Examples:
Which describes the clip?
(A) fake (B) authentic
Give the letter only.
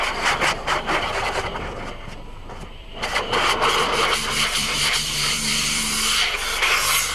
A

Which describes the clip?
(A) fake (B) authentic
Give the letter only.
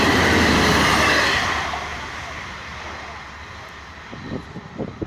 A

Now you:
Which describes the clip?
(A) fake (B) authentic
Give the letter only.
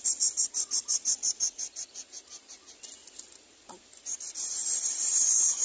B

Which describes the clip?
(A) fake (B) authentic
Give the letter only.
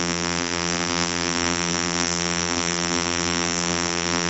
A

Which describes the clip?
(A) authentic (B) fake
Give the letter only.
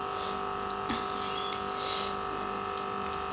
A